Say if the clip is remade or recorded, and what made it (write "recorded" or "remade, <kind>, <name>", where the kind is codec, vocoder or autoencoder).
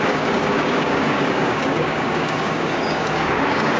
remade, codec, DAC